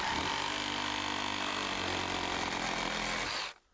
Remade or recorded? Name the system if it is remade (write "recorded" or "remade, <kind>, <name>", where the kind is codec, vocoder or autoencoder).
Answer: recorded